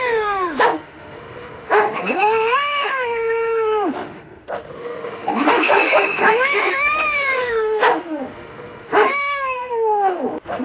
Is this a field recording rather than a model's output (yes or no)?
no